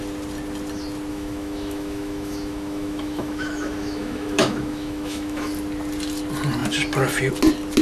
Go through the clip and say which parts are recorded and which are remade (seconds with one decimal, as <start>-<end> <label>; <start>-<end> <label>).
0.0-1.1 recorded; 1.1-5.5 remade; 5.5-7.8 recorded